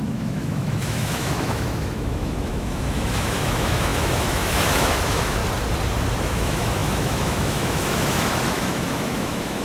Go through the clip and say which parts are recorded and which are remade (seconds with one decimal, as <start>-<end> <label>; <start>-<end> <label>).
0.0-5.4 remade; 5.4-6.2 recorded; 6.2-9.6 remade